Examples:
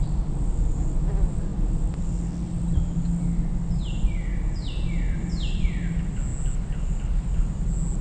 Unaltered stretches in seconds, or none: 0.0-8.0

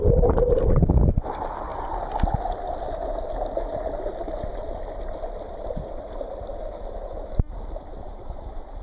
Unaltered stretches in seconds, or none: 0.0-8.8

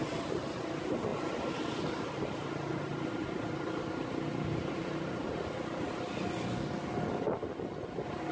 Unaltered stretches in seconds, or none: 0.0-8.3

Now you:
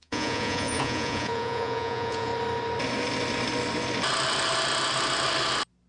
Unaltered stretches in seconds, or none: 2.3-5.9